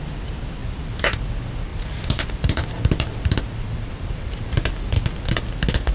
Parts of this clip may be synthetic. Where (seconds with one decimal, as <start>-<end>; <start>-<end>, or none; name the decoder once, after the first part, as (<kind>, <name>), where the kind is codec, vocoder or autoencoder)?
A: 0.6-1.2 (vocoder, BigVGAN v2); 1.7-5.2